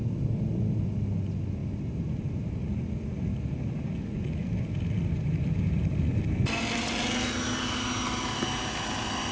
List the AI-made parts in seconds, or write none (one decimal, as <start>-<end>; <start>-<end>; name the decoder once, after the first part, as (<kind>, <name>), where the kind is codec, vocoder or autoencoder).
none